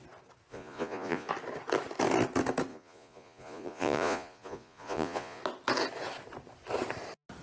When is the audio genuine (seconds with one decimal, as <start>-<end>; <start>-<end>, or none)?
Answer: 0.0-0.5; 1.3-2.7; 5.4-7.4